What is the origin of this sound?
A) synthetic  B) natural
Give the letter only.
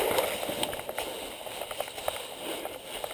B